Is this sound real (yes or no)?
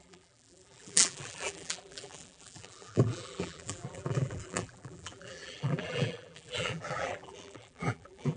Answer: no